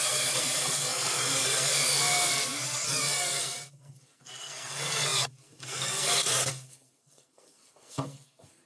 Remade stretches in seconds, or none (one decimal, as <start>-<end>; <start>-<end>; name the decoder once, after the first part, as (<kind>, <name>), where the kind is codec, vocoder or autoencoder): 0.0-8.7 (codec, SNAC)